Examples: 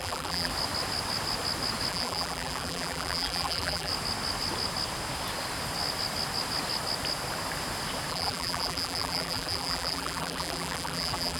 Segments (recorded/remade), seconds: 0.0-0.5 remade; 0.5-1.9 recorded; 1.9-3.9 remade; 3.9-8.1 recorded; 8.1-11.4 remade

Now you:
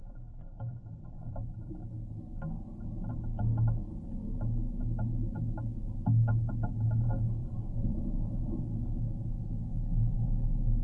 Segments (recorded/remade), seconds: 0.0-1.7 remade; 1.7-7.4 recorded; 7.4-8.0 remade; 8.0-10.8 recorded

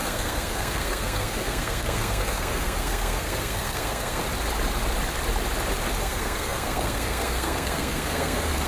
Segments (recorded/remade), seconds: 0.0-4.2 remade; 4.2-6.0 recorded; 6.0-8.7 remade

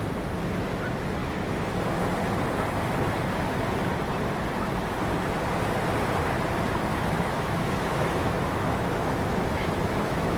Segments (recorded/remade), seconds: 0.0-1.2 recorded; 1.2-1.8 remade; 1.8-6.9 recorded; 6.9-10.4 remade

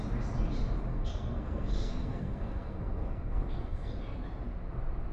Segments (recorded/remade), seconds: 0.0-0.9 recorded; 0.9-4.0 remade; 4.0-5.1 recorded